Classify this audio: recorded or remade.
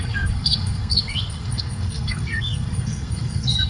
remade